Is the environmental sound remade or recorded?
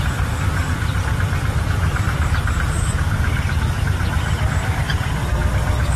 recorded